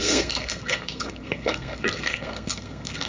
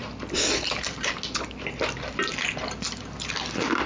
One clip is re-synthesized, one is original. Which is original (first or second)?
second